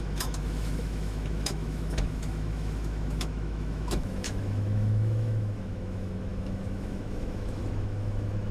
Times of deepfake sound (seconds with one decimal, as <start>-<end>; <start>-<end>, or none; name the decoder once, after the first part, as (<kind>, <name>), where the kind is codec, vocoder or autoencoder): 0.0-8.5 (autoencoder, DAC-VAE)